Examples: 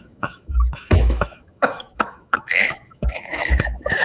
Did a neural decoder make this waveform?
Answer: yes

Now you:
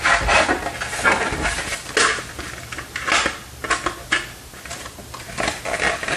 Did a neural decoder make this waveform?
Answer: no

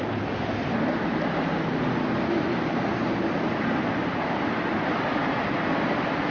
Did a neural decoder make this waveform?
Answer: no